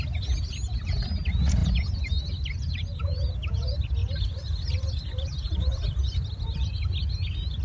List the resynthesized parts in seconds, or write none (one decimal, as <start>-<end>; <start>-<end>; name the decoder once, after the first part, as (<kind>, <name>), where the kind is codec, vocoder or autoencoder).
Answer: none